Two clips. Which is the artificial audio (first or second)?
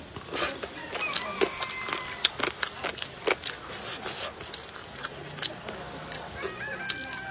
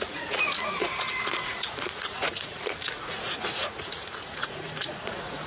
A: second